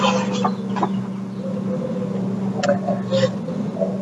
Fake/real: real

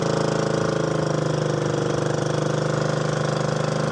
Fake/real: real